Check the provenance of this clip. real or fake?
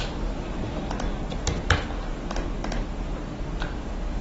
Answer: real